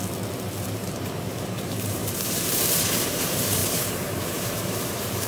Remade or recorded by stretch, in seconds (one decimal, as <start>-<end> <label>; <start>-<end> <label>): 0.0-0.7 recorded; 0.7-5.3 remade

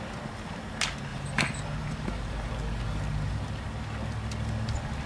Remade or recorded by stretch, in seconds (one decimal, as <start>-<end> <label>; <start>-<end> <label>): 0.0-1.1 recorded; 1.1-2.5 remade; 2.5-5.1 recorded

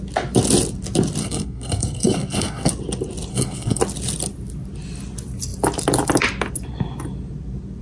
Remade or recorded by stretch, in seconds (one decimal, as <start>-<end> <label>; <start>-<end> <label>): 0.0-1.2 recorded; 1.2-2.7 remade; 2.7-3.3 recorded; 3.3-3.8 remade; 3.8-7.8 recorded

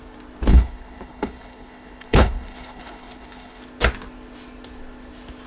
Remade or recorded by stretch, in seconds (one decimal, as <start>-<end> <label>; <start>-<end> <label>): 0.0-0.5 recorded; 0.5-3.6 remade; 3.6-5.5 recorded

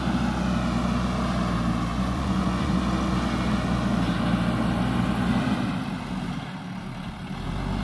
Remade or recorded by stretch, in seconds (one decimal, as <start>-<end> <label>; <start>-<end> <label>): 0.0-1.9 recorded; 1.9-2.8 remade; 2.8-7.8 recorded

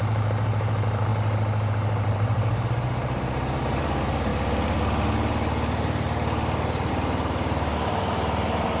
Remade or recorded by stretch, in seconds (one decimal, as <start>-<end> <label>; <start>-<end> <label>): 0.0-1.1 remade; 1.1-1.7 recorded; 1.7-4.3 remade; 4.3-6.9 recorded; 6.9-8.8 remade

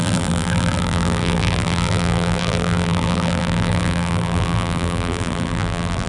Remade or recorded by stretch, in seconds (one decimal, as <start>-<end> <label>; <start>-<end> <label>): 0.0-6.1 remade